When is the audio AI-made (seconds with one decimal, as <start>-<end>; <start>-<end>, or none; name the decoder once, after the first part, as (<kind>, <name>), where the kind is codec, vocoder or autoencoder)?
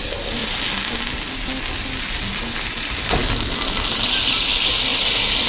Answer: none